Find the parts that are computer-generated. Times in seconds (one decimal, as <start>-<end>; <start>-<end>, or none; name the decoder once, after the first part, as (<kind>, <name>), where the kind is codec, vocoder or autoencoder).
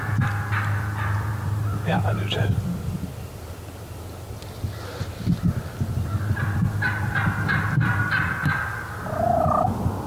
1.3-2.5 (vocoder, BigVGAN v2)